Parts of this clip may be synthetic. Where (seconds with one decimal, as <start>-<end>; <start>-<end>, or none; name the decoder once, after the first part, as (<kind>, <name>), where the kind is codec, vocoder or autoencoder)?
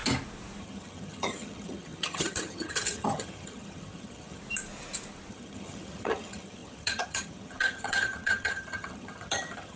0.6-4.4 (vocoder, HiFi-GAN); 5.3-9.8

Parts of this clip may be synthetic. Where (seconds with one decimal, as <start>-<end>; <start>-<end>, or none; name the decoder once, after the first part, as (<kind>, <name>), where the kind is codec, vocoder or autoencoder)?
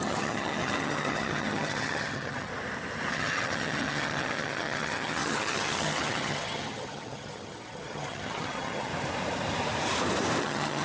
0.0-2.5 (vocoder, HiFi-GAN); 3.1-8.9; 10.4-10.8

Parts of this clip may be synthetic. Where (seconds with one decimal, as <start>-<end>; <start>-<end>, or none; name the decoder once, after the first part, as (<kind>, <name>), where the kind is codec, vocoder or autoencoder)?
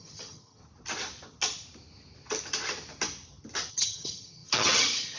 0.0-0.6 (vocoder, HiFi-GAN); 3.7-5.2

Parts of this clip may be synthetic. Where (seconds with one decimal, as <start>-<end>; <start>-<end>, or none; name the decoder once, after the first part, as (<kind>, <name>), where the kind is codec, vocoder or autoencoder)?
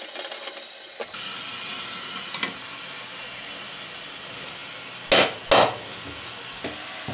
none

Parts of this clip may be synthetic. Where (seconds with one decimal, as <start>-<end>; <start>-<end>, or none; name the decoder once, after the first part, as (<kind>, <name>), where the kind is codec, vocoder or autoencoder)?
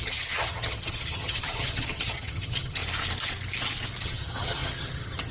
0.0-2.8 (vocoder, HiFi-GAN); 4.0-5.3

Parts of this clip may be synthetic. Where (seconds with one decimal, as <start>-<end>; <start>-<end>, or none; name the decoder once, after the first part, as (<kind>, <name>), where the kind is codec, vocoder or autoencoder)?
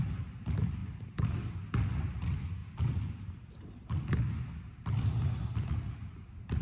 none